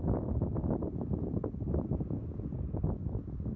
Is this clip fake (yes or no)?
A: no